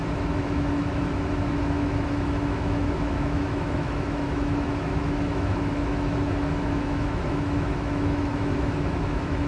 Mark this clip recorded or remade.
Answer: remade